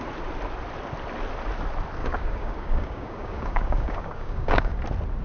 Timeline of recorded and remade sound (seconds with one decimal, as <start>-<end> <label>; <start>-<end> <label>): 0.0-2.0 recorded; 2.0-4.8 remade; 4.8-5.2 recorded